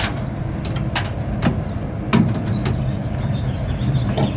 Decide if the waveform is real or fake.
real